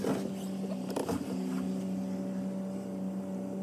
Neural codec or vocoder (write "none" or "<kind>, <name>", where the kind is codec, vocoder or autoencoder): none